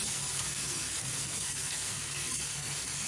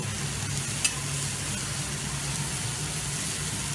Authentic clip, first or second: second